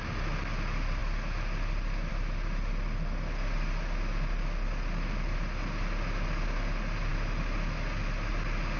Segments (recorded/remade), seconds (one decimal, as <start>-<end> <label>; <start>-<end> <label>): 0.0-8.8 recorded